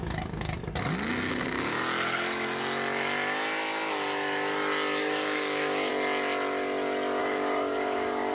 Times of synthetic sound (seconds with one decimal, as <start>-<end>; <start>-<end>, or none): 0.0-0.6; 1.3-1.8; 5.0-5.9; 7.2-8.3